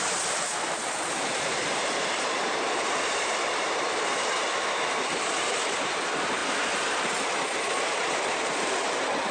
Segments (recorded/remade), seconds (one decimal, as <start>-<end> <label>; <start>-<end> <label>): 0.0-6.4 remade; 6.4-8.1 recorded; 8.1-9.3 remade